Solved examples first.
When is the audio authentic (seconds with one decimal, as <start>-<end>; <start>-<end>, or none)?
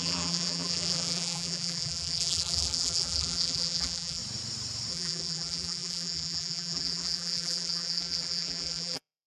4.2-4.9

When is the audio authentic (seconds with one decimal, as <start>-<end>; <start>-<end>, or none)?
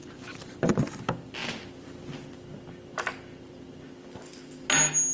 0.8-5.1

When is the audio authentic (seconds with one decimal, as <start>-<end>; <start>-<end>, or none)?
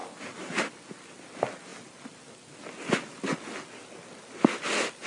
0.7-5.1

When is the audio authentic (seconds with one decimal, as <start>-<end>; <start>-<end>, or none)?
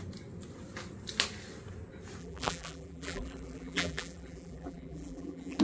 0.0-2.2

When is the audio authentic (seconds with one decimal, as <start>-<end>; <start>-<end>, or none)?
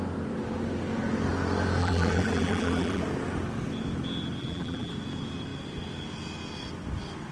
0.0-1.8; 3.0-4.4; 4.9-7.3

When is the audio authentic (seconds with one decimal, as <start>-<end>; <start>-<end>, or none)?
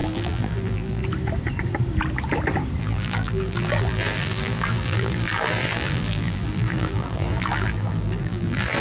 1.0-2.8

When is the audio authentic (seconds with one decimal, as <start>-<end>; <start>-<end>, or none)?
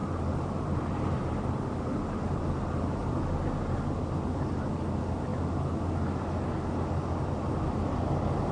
3.2-8.5